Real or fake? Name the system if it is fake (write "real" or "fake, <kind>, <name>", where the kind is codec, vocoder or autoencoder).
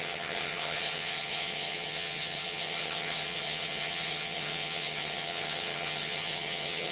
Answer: fake, vocoder, HiFi-GAN